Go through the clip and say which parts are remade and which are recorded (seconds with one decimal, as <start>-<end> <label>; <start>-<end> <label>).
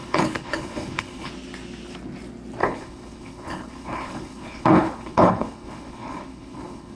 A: 0.0-1.3 remade; 1.3-2.6 recorded; 2.6-7.0 remade